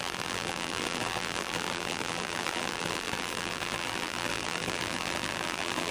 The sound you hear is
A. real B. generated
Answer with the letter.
B